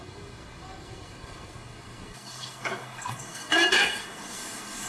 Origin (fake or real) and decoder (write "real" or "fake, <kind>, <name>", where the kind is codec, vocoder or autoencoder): fake, codec, SNAC